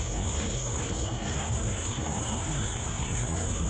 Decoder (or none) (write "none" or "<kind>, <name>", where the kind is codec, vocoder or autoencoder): codec, SNAC